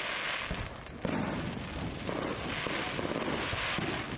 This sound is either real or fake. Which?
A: real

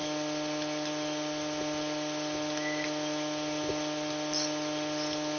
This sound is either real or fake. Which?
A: real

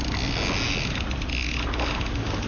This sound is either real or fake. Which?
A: real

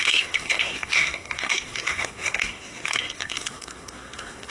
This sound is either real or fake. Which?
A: fake